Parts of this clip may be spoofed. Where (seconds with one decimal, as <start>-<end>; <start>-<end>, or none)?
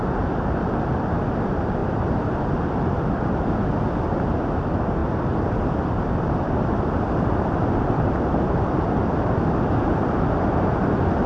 none